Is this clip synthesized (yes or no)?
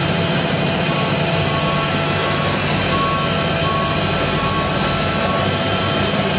no